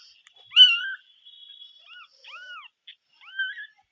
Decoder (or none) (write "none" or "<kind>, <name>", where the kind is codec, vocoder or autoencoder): none